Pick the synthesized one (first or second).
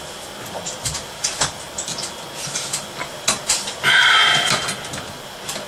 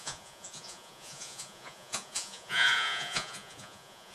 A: second